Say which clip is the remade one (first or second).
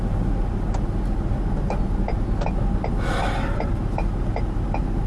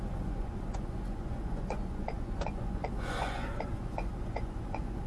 second